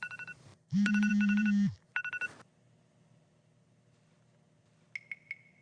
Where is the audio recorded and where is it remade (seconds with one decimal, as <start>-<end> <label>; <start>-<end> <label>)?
0.0-1.9 remade; 1.9-5.6 recorded

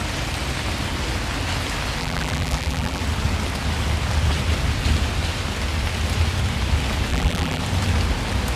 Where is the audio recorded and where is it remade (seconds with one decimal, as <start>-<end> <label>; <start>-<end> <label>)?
0.0-2.0 recorded; 2.0-3.0 remade; 3.0-7.1 recorded; 7.1-7.6 remade; 7.6-8.6 recorded

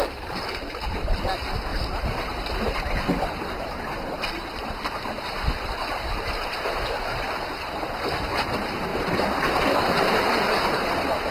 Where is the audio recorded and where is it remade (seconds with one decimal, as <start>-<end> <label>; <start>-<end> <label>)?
0.0-8.9 recorded; 8.9-11.3 remade

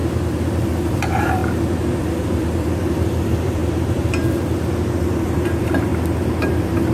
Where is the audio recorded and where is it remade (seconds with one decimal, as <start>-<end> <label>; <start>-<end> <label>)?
0.0-0.6 recorded; 0.6-1.4 remade; 1.4-2.0 recorded; 2.0-3.6 remade; 3.6-5.0 recorded; 5.0-5.9 remade; 5.9-6.4 recorded; 6.4-6.9 remade

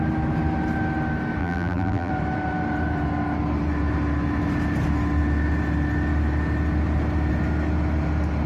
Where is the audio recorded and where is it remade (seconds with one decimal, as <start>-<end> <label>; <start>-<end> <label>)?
0.0-1.4 recorded; 1.4-2.1 remade; 2.1-8.5 recorded

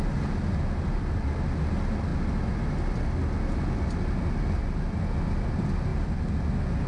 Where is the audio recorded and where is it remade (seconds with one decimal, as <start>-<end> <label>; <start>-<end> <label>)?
0.0-0.5 recorded; 0.5-1.1 remade; 1.1-5.9 recorded; 5.9-6.5 remade; 6.5-6.9 recorded

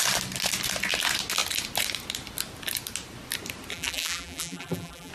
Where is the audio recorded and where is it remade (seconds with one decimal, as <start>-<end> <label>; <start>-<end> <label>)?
0.0-3.7 recorded; 3.7-5.1 remade